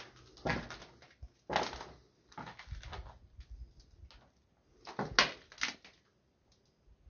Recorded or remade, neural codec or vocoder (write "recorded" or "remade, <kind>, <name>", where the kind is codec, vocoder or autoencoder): recorded